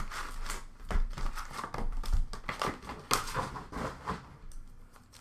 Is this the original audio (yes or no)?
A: yes